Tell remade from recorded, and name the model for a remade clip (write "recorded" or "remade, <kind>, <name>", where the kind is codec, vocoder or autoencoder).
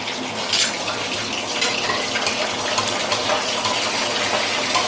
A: recorded